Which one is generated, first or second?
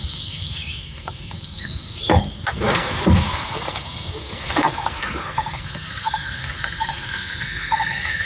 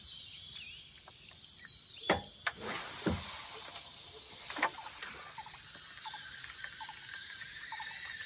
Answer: first